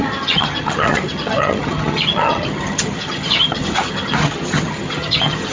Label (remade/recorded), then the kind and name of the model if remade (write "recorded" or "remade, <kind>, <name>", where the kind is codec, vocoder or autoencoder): remade, vocoder, HiFi-GAN